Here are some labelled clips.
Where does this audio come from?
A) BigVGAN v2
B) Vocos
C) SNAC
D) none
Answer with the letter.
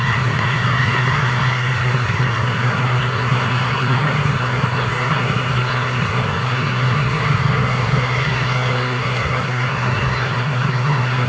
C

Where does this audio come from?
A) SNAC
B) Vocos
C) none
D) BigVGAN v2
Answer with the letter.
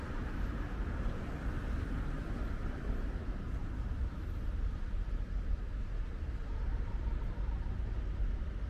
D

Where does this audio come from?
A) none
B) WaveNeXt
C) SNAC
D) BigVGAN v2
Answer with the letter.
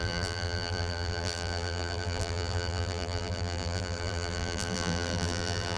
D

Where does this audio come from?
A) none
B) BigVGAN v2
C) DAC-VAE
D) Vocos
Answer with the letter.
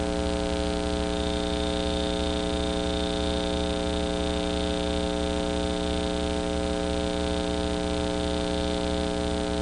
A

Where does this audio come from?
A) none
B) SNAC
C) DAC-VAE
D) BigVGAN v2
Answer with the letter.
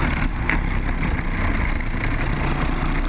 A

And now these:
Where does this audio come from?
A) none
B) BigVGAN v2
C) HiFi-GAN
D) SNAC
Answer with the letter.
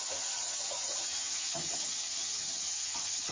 C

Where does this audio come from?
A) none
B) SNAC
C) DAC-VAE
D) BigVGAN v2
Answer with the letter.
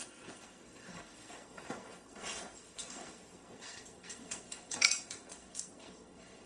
B